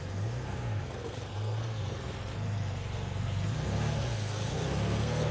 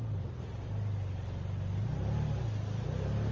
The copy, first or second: first